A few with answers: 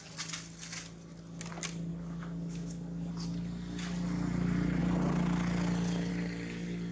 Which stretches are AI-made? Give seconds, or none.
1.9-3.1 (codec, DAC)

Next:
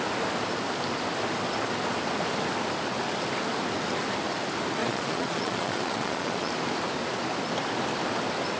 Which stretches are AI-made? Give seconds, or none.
4.8-6.5 (vocoder, Vocos)